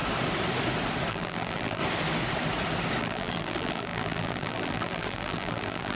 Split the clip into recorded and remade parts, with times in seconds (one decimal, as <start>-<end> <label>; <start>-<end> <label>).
0.0-1.1 recorded; 1.1-1.8 remade; 1.8-3.0 recorded; 3.0-6.0 remade